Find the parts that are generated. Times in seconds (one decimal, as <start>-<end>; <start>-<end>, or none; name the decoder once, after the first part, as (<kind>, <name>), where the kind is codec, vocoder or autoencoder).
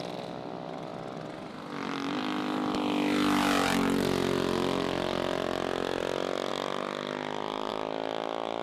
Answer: none